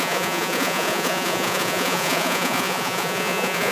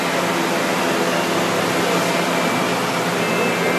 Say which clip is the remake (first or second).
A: first